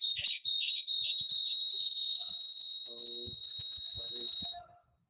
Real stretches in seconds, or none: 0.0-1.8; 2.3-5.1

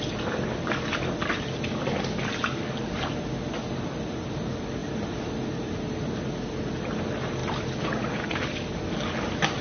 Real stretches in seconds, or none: 0.0-9.6

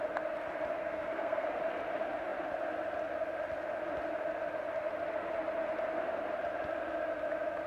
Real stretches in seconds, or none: 0.0-0.8; 1.6-7.7

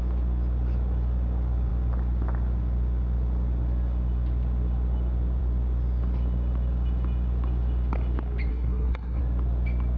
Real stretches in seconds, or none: 0.0-8.5; 9.2-10.0

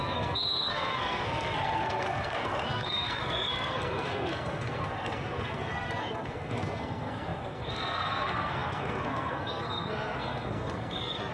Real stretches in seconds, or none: none

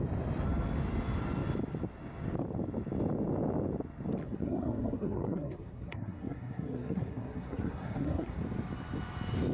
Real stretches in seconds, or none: 0.0-4.2; 8.4-9.5

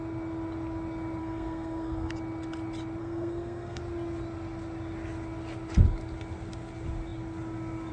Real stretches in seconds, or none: 0.0-1.2; 2.1-3.0; 3.8-7.9